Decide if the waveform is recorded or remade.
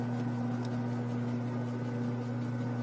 recorded